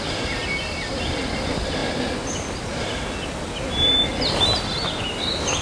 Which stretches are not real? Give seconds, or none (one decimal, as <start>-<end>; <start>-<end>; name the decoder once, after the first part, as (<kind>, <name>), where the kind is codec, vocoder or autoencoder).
none